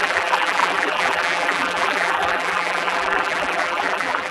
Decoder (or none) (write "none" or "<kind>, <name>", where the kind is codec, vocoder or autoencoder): vocoder, BigVGAN v2